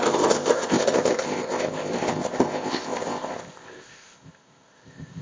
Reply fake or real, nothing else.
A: fake